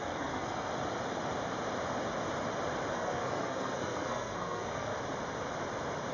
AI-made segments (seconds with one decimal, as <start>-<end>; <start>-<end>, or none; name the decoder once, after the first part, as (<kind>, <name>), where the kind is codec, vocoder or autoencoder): 0.0-0.7 (codec, SNAC); 2.9-4.9